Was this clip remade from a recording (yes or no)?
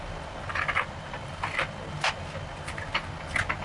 no